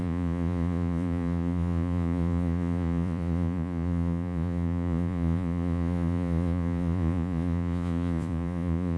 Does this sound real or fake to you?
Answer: fake